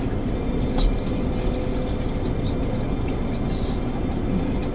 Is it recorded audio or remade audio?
recorded